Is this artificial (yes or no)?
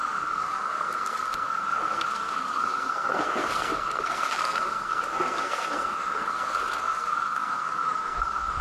yes